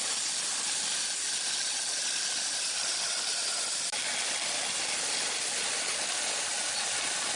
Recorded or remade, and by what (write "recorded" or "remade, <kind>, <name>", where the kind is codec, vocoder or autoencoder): recorded